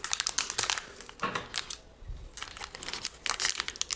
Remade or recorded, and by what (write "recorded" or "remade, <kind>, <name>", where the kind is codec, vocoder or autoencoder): recorded